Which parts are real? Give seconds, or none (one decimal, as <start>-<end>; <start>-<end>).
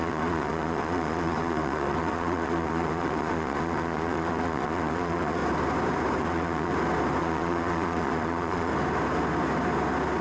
5.4-6.2; 6.7-7.2; 8.7-10.2